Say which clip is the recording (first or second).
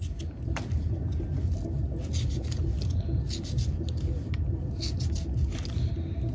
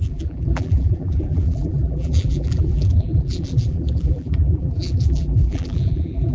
first